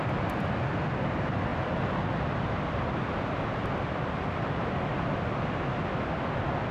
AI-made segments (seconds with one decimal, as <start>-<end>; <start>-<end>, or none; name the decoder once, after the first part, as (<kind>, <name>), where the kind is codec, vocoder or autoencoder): none